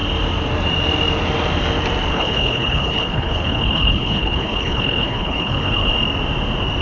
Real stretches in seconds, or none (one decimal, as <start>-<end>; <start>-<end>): 0.0-2.1; 5.9-6.8